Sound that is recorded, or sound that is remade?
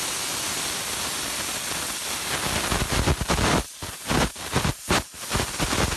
recorded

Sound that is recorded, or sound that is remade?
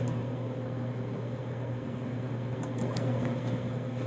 remade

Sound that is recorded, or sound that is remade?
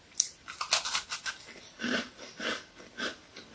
recorded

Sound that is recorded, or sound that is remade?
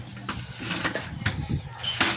recorded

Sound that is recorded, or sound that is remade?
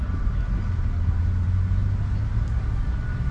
recorded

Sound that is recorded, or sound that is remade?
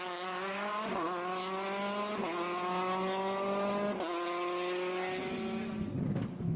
recorded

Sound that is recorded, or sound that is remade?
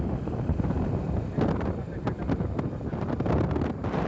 recorded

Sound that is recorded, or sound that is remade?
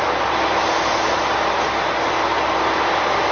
recorded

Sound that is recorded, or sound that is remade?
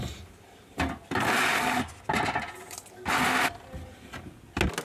recorded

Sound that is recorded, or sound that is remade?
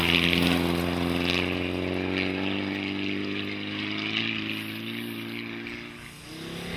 recorded